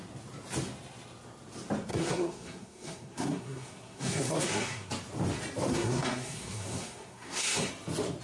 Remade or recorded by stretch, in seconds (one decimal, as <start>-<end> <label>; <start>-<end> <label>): 0.0-1.9 recorded; 1.9-4.9 remade; 4.9-5.7 recorded; 5.7-7.7 remade; 7.7-8.2 recorded